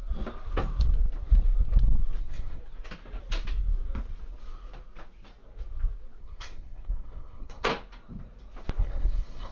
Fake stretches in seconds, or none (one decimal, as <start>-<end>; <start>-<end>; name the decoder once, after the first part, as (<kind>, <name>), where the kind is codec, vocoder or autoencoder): 2.2-2.6 (codec, SNAC); 6.2-7.7; 8.8-9.5